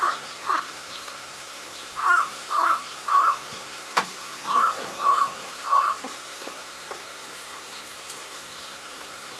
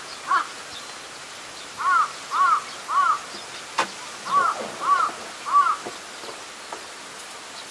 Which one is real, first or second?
second